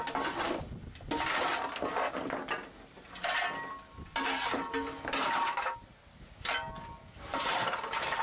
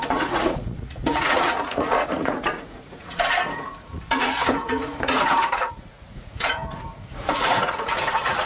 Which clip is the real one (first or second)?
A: first